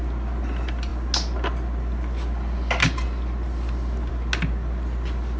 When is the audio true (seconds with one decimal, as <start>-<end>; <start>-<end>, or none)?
0.0-5.4